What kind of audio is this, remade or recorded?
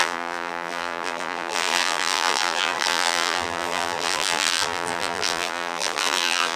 remade